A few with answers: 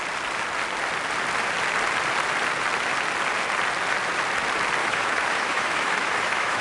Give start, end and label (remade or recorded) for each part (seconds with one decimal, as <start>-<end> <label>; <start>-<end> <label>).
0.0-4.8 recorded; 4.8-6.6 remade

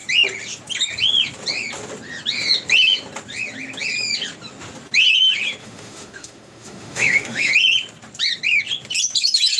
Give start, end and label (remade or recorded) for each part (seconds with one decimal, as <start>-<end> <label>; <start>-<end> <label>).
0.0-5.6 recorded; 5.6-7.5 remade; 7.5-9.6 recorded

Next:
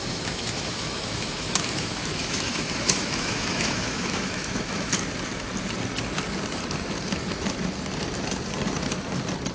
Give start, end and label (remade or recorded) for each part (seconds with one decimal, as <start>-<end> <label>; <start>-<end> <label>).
0.0-4.9 remade; 4.9-9.5 recorded

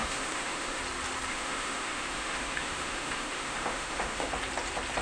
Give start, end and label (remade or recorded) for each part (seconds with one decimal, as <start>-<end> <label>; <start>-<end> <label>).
0.0-0.8 remade; 0.8-1.3 recorded; 1.3-4.3 remade; 4.3-5.0 recorded

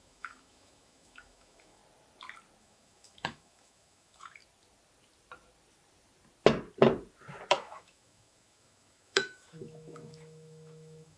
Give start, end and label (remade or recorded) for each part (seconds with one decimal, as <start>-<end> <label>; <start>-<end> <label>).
0.0-1.8 remade; 1.8-2.6 recorded; 2.6-4.4 remade; 4.4-7.5 recorded; 7.5-11.2 remade